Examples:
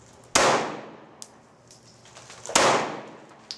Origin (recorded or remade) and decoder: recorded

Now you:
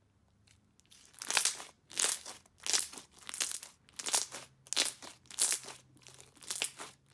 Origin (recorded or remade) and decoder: recorded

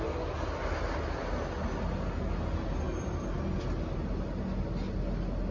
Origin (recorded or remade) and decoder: recorded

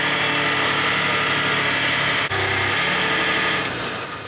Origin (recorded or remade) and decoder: recorded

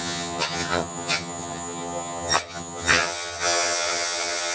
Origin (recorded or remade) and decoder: remade, vocoder, HiFi-GAN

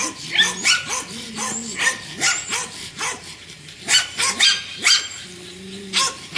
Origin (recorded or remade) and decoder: recorded